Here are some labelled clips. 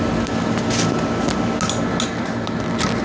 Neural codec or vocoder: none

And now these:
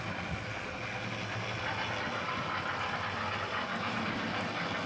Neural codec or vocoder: none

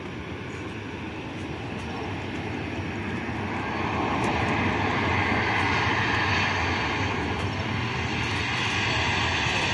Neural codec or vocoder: none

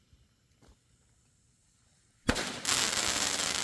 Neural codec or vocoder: none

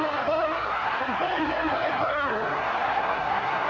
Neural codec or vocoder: codec, SNAC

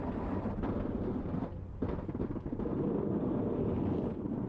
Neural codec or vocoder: none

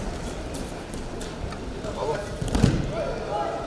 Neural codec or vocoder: none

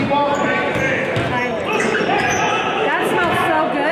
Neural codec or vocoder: none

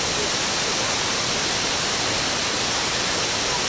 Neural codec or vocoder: none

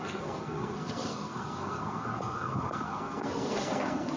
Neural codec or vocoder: codec, SNAC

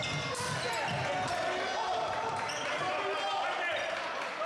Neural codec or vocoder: none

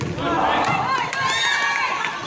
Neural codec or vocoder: none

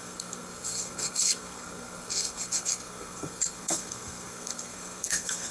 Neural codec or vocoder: codec, SNAC